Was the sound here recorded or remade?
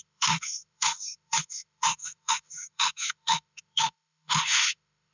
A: remade